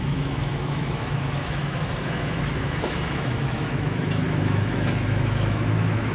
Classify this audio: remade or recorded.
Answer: remade